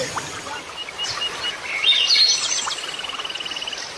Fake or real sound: real